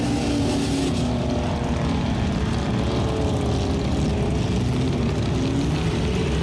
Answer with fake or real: real